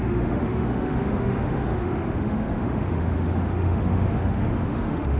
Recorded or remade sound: remade